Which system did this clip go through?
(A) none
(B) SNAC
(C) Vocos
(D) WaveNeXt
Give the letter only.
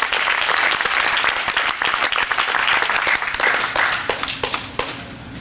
A